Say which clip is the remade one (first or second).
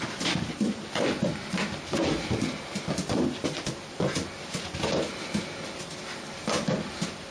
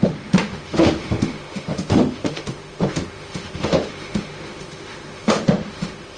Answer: second